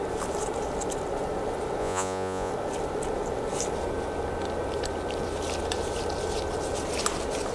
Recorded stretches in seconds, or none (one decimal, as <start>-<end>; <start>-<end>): 0.0-1.8; 2.5-7.5

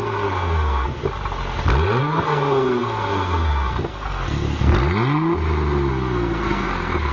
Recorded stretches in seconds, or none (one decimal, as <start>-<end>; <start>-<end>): 1.0-2.0; 4.7-5.9

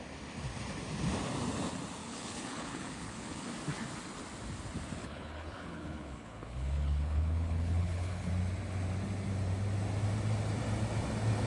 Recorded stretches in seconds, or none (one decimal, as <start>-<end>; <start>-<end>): 0.0-2.0; 3.5-5.0; 8.3-11.5

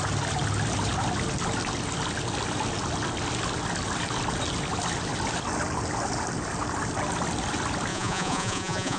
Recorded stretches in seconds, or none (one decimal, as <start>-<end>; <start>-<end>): 0.0-7.9